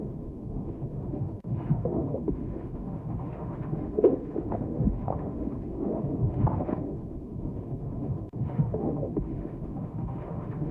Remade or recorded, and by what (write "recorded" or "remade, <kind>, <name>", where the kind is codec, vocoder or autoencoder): remade, autoencoder, DAC-VAE